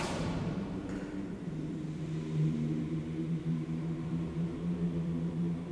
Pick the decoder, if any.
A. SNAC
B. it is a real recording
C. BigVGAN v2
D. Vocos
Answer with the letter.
C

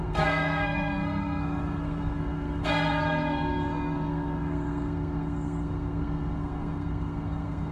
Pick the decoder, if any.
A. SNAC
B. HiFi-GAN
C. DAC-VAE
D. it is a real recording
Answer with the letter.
A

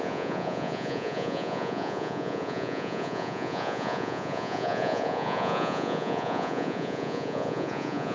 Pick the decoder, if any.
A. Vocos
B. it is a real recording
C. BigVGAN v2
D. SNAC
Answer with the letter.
A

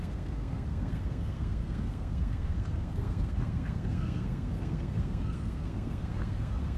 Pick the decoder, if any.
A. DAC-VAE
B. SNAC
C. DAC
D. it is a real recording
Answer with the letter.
B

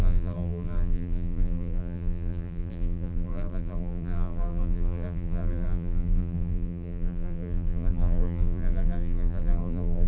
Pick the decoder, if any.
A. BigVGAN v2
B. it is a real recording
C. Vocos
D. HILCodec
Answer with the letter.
A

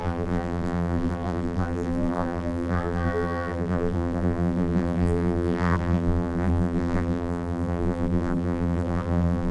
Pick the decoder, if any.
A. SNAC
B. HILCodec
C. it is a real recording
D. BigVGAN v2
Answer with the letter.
D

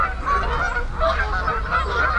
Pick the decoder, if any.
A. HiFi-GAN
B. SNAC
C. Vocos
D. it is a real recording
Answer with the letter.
D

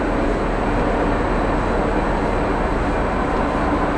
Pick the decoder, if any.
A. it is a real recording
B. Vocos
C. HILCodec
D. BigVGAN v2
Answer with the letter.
A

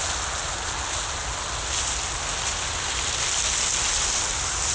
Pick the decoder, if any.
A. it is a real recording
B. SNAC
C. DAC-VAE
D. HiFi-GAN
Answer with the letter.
A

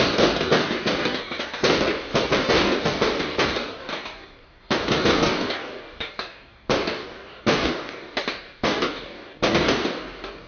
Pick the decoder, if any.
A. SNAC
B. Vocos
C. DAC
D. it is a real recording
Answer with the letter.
C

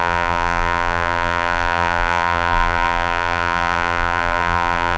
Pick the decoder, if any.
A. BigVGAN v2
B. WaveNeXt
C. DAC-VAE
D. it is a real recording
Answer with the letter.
A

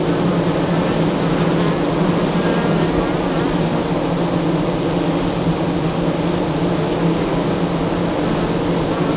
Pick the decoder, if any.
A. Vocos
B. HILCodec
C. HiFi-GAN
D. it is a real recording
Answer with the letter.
D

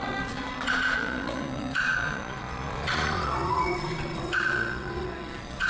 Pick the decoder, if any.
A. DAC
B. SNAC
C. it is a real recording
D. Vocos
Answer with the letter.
D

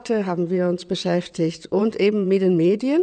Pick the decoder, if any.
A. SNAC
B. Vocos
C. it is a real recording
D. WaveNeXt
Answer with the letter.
D